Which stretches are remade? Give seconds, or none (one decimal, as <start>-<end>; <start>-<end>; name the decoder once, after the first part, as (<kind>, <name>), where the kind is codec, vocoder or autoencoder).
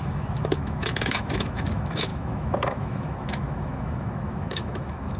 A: 0.0-5.2 (autoencoder, DAC-VAE)